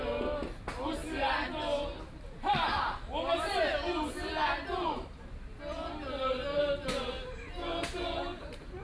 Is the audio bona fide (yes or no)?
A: yes